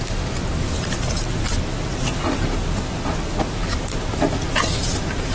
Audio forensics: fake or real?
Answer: real